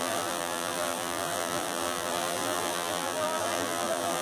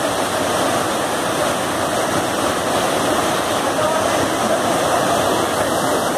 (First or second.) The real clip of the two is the second